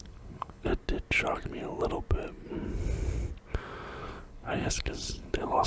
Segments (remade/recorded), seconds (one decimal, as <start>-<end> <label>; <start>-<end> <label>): 0.0-0.7 remade; 0.7-4.0 recorded; 4.0-5.7 remade